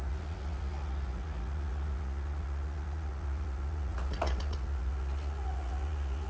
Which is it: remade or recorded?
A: remade